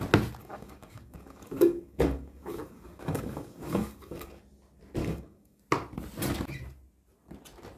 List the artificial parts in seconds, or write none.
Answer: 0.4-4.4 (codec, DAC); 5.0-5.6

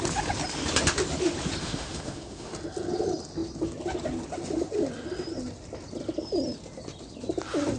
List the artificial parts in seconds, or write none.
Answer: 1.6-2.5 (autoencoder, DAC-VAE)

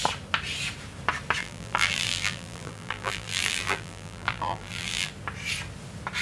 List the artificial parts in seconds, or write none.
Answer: 1.4-5.1 (vocoder, BigVGAN v2)